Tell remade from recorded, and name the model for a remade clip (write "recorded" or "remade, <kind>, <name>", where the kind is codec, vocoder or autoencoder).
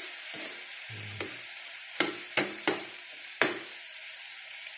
remade, vocoder, BigVGAN v2